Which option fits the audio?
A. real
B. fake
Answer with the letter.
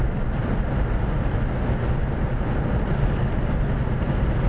A